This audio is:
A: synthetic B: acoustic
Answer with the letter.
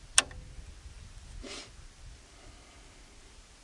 B